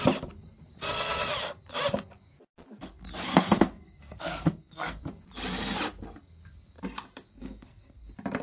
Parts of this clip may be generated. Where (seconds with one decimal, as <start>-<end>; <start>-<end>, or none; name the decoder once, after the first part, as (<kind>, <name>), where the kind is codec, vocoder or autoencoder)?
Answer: 3.3-5.0 (codec, SNAC); 7.4-8.0